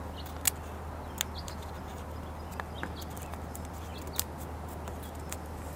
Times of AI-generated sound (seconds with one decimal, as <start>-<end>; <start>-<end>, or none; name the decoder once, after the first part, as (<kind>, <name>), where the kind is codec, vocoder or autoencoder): none